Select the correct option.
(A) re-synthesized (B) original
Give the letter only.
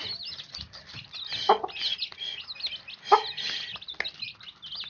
B